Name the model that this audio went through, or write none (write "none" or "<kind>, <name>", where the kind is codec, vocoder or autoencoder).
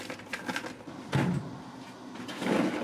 none